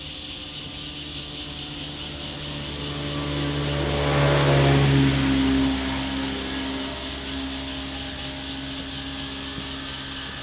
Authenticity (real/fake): real